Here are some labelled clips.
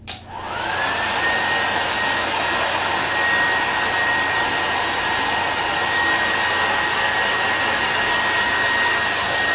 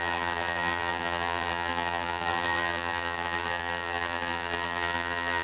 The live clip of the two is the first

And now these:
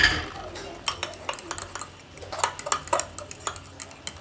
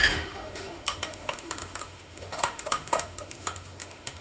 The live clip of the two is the first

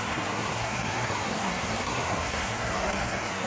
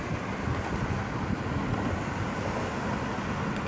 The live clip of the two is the second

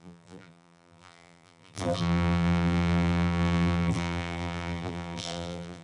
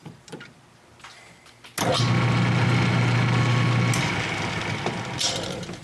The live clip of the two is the second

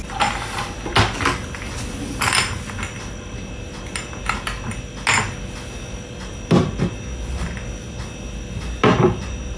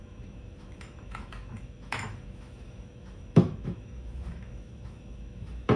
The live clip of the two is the first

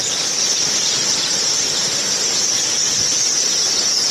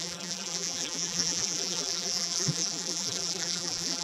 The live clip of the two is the first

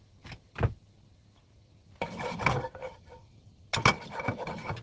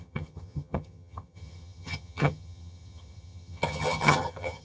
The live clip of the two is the first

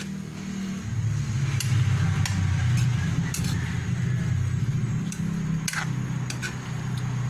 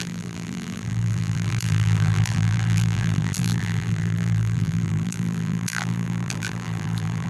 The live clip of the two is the first